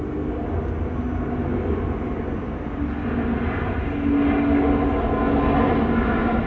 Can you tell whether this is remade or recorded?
recorded